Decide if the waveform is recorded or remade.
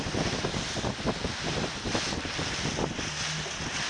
recorded